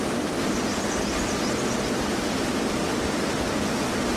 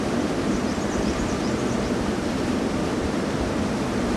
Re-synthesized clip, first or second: second